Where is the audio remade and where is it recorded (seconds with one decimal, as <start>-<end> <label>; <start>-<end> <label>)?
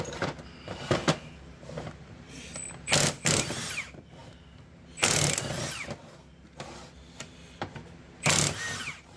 0.0-9.2 recorded